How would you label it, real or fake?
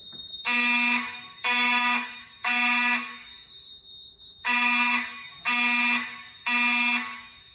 fake